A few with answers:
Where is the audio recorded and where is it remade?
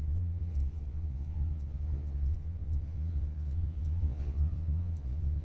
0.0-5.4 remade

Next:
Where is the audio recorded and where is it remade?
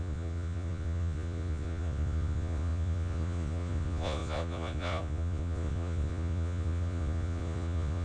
0.0-8.0 remade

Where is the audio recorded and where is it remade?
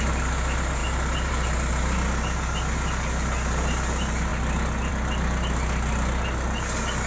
0.0-7.1 recorded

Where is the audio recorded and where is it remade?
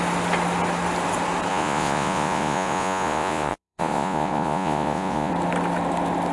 0.0-1.5 recorded; 1.5-5.3 remade; 5.3-6.3 recorded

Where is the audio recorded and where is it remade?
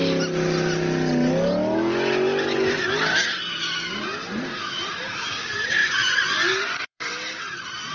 0.0-5.8 recorded; 5.8-7.1 remade; 7.1-7.9 recorded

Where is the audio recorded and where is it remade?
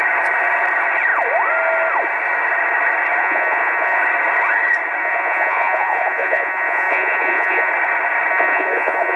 0.0-3.2 recorded; 3.2-4.0 remade; 4.0-5.0 recorded; 5.0-7.7 remade; 7.7-8.3 recorded; 8.3-9.2 remade